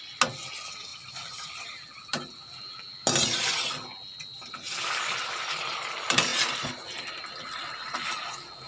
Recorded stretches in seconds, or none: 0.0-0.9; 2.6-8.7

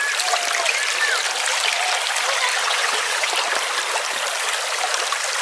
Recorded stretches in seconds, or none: 0.0-2.6; 3.3-5.4

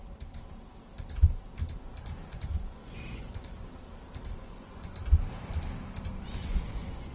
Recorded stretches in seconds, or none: 0.0-2.3; 3.6-4.4; 4.9-6.2

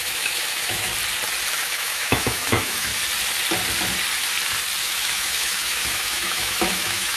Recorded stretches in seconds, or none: 0.9-1.5; 2.9-4.8